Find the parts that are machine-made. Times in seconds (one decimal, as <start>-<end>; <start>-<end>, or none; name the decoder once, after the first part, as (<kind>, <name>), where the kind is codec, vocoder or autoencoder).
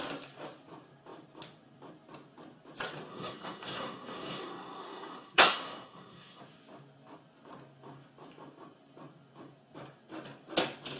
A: 3.1-6.4 (codec, SNAC)